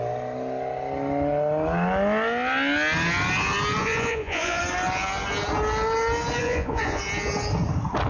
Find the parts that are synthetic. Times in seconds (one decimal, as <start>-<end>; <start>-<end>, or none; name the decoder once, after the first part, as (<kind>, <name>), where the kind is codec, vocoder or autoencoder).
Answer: 3.8-4.6 (vocoder, Vocos); 6.4-7.0